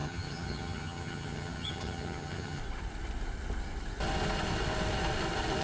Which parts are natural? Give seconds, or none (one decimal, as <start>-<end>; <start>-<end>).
2.6-5.6